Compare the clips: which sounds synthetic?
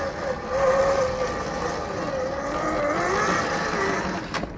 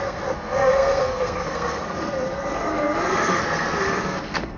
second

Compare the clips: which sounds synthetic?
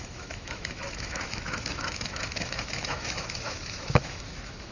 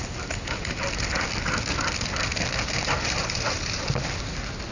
first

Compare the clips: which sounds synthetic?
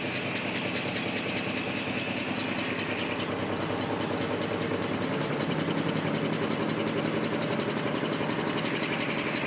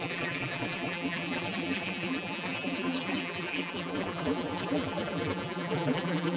second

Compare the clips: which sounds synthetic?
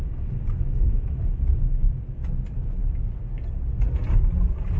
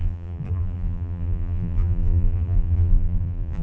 second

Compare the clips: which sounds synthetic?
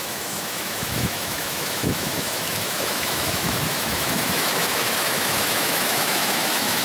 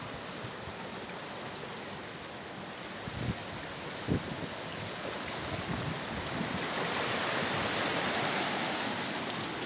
first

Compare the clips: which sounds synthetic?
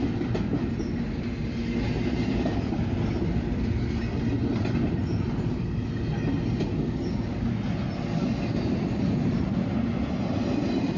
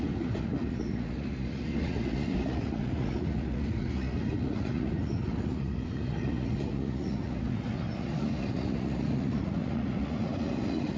second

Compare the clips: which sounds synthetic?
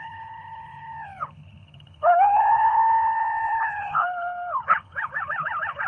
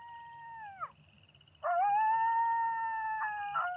first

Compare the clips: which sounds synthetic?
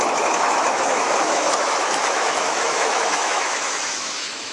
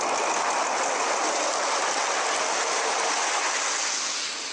first